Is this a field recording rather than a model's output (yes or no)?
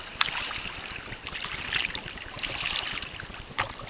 yes